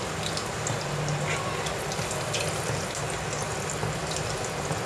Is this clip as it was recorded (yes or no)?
yes